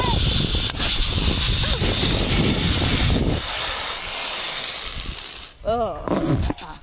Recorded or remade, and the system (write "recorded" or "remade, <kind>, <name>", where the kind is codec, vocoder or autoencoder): remade, vocoder, BigVGAN v2